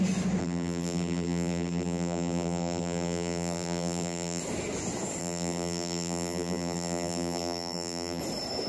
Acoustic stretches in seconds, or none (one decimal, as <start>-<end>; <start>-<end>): 0.0-0.4; 4.4-5.2; 8.2-8.7